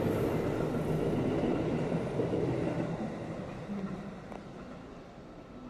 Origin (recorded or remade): recorded